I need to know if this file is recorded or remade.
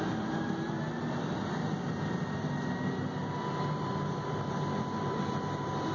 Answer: recorded